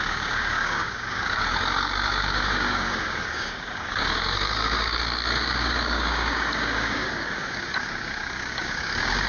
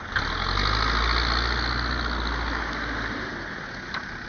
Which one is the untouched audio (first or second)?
second